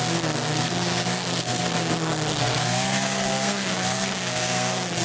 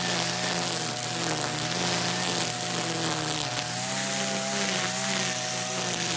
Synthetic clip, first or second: first